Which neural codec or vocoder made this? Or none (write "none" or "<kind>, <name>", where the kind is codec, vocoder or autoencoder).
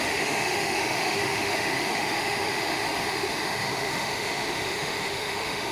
autoencoder, DAC-VAE